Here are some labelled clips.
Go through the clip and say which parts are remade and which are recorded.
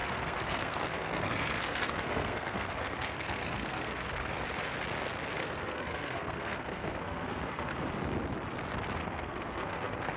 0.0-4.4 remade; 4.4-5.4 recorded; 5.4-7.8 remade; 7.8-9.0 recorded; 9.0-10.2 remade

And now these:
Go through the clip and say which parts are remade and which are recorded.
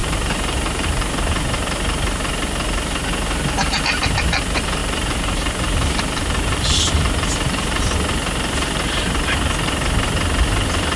0.0-1.1 remade; 1.1-4.8 recorded; 4.8-7.8 remade; 7.8-11.0 recorded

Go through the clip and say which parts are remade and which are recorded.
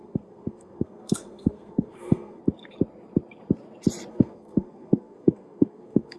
0.0-2.4 remade; 2.4-4.1 recorded; 4.1-6.2 remade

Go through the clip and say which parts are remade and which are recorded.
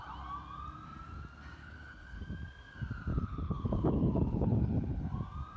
0.0-1.6 recorded; 1.6-2.2 remade; 2.2-3.1 recorded; 3.1-5.1 remade; 5.1-5.6 recorded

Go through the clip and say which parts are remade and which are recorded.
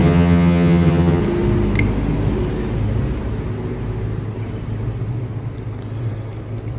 0.0-1.2 remade; 1.2-6.8 recorded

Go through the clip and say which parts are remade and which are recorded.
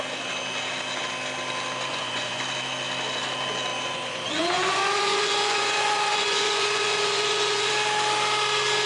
0.0-1.9 recorded; 1.9-2.4 remade; 2.4-3.7 recorded; 3.7-7.7 remade; 7.7-8.9 recorded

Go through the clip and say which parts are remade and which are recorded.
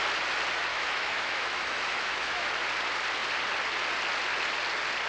0.0-0.7 recorded; 0.7-2.5 remade; 2.5-5.1 recorded